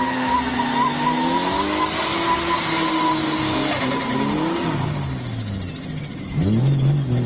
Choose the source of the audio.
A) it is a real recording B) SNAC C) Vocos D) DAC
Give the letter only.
A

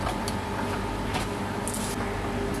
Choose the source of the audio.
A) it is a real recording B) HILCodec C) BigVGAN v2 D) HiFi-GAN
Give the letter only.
A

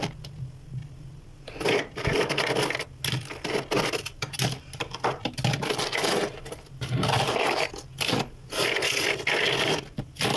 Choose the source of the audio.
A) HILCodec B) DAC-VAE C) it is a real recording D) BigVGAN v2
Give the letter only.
C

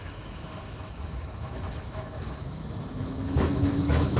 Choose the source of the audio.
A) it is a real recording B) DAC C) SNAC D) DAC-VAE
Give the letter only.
D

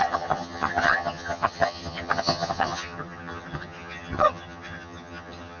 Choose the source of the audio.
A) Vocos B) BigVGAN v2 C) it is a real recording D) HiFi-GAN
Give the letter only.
D